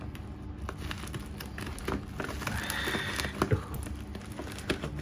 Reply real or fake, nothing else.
real